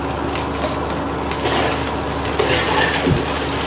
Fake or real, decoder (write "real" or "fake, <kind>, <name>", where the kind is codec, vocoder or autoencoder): real